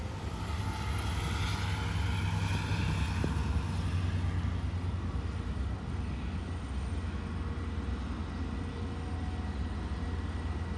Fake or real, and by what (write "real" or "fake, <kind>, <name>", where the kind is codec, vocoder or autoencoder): real